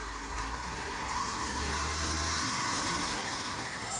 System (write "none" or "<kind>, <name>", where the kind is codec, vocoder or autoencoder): codec, SNAC